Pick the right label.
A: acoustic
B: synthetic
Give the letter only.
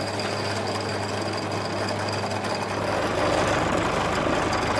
A